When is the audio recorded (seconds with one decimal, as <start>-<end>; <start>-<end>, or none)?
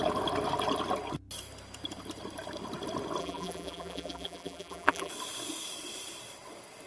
0.0-3.2; 5.1-6.9